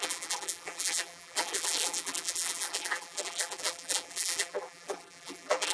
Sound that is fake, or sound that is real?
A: fake